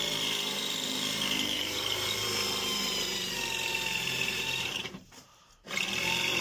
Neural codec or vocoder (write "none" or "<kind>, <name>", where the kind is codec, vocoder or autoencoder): vocoder, BigVGAN v2